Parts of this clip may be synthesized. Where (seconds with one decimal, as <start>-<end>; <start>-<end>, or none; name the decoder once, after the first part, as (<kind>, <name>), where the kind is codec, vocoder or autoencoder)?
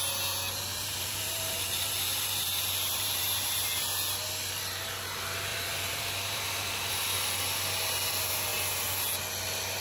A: 0.7-3.8 (vocoder, BigVGAN v2); 5.5-6.9